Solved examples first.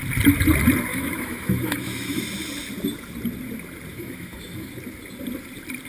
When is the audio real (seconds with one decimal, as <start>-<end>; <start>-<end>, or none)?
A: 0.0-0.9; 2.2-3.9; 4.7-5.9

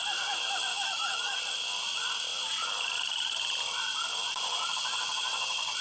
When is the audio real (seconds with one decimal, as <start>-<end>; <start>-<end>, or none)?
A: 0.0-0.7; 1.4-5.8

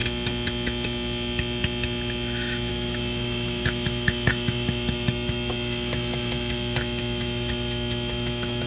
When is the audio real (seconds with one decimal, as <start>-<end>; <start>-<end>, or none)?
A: 0.0-2.7